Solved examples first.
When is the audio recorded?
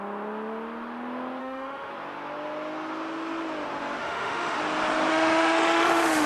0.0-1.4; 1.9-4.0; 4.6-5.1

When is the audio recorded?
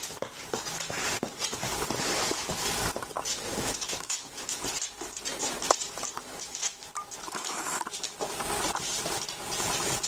0.0-3.5; 4.6-6.1; 6.8-10.1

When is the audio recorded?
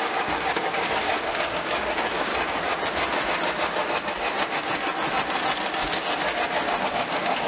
2.3-6.8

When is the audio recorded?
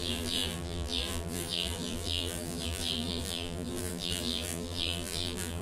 none